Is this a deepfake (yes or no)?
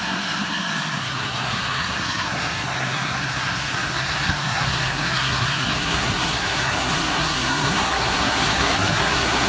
yes